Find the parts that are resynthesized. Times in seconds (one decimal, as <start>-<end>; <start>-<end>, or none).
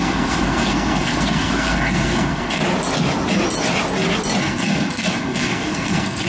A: 0.0-2.6; 4.4-6.3